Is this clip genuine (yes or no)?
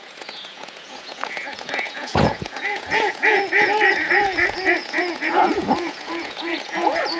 no